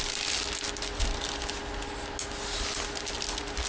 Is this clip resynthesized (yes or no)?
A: no